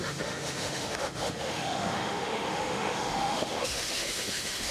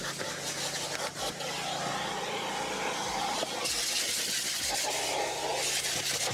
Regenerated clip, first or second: first